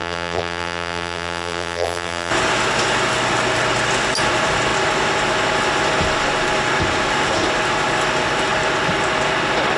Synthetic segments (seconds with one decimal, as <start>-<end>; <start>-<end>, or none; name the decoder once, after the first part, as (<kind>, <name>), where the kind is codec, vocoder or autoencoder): 0.0-2.3 (vocoder, BigVGAN v2)